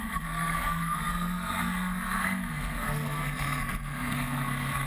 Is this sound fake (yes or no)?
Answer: yes